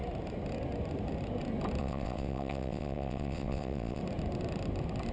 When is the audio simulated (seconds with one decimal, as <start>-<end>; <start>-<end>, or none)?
1.8-4.0